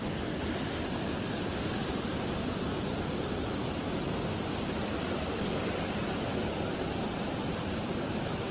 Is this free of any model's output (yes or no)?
yes